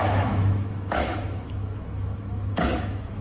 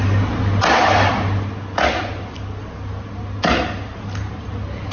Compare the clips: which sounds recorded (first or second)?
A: second